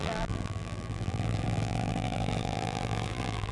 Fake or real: fake